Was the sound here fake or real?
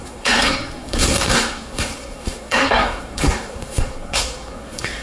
fake